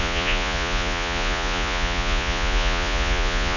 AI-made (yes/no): yes